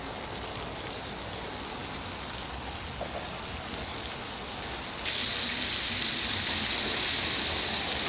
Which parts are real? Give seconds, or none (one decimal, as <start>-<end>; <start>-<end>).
0.0-8.1